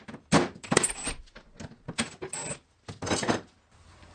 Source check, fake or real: real